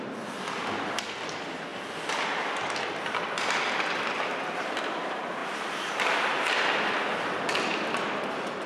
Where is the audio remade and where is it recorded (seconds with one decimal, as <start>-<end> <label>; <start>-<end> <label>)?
0.0-1.7 remade; 1.7-4.1 recorded; 4.1-8.7 remade